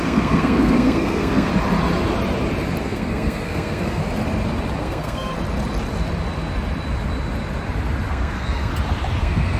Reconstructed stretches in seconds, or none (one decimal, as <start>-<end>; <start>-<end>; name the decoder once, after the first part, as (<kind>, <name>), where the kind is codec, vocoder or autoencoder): 0.0-1.5 (codec, SNAC); 2.8-4.0; 4.8-5.3; 8.1-8.7; 9.2-9.6